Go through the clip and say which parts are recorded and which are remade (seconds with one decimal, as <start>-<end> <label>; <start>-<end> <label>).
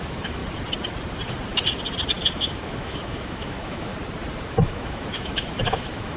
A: 0.0-0.4 remade; 0.4-2.3 recorded; 2.3-3.9 remade; 3.9-4.5 recorded; 4.5-6.2 remade